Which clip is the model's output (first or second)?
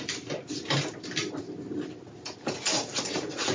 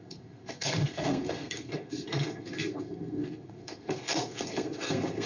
second